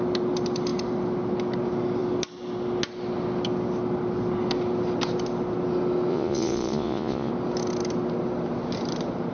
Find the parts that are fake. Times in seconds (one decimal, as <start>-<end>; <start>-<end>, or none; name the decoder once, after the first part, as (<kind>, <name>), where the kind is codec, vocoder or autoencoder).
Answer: 6.1-7.3 (vocoder, Vocos)